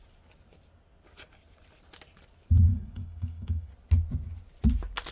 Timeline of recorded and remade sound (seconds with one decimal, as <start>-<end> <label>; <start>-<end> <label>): 0.0-2.7 recorded; 2.7-3.7 remade; 3.7-5.1 recorded